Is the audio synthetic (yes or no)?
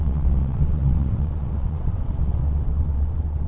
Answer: yes